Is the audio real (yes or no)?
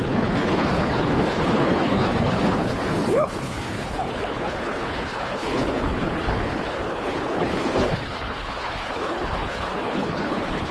no